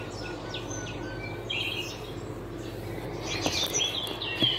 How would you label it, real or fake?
real